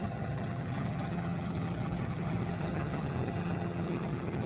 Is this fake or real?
fake